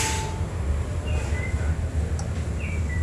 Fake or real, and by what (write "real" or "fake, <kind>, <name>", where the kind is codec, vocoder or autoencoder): real